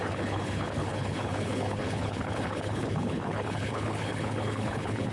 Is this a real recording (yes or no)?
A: no